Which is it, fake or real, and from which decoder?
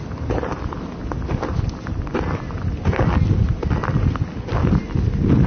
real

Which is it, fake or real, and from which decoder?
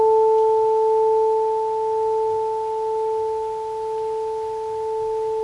real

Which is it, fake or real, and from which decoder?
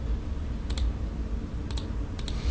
real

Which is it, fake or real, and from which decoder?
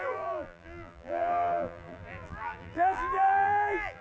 fake, vocoder, BigVGAN v2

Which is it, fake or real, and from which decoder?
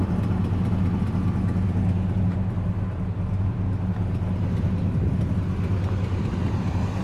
real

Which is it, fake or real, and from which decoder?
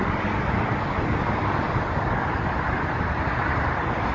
real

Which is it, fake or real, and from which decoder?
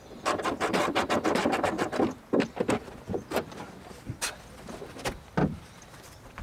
real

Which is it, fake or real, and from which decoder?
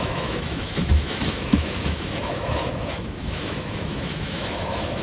fake, autoencoder, DAC-VAE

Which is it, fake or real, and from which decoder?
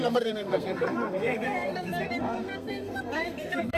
fake, codec, SNAC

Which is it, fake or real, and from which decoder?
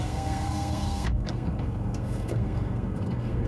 fake, codec, SNAC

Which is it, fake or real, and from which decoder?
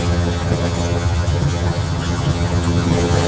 fake, vocoder, HiFi-GAN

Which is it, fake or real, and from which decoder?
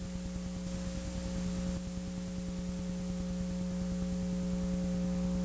real